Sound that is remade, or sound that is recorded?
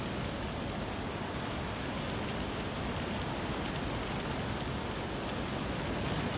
recorded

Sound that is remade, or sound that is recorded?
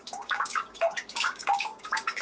remade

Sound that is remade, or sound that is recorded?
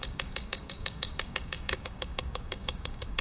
remade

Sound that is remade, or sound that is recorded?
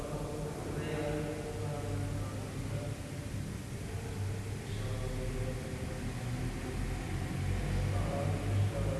recorded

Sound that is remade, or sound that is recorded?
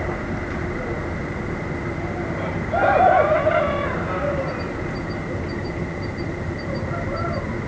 recorded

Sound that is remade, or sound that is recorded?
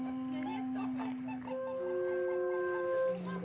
recorded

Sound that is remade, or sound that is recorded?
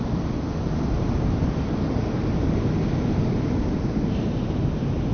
recorded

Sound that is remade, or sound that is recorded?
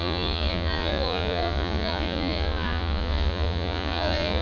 remade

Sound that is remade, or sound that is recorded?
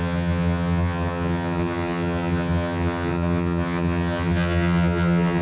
remade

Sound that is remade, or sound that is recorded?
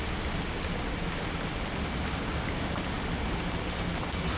recorded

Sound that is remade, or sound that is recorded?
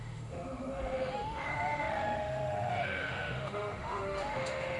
remade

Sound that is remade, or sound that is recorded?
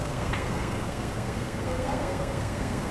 remade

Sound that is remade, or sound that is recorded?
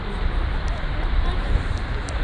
recorded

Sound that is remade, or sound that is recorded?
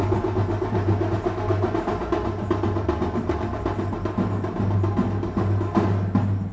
recorded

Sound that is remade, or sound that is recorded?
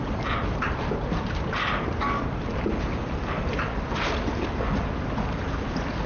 recorded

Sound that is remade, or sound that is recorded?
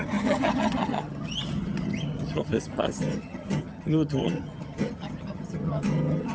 remade